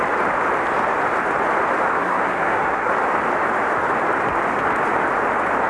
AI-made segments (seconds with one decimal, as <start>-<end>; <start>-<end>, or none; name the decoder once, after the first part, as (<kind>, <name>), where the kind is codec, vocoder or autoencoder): 1.9-2.9 (codec, SNAC)